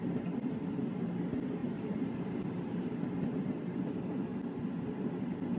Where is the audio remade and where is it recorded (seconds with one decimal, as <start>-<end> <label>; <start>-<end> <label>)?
0.0-1.6 recorded; 1.6-3.0 remade; 3.0-5.6 recorded